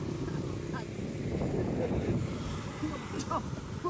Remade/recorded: recorded